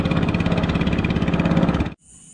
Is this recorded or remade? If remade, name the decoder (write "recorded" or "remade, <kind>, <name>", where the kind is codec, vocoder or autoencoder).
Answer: recorded